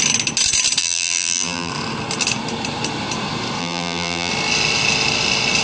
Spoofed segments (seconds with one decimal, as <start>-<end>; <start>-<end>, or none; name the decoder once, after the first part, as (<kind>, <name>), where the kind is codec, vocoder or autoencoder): 0.8-1.7 (vocoder, BigVGAN v2); 3.6-4.3